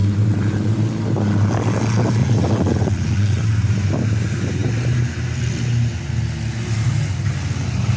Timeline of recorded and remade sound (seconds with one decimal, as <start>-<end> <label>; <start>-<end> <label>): 0.0-2.2 recorded; 2.2-3.4 remade; 3.4-8.0 recorded